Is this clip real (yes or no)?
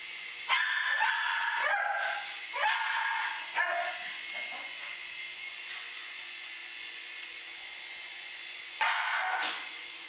no